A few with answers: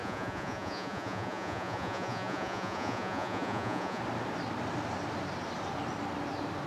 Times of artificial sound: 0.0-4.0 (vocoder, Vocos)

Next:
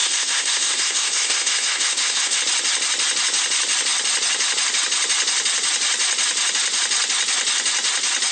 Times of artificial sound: 0.0-2.4 (codec, SNAC)

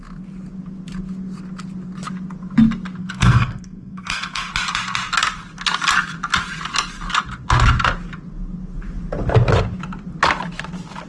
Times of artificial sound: 3.0-4.5 (codec, SNAC)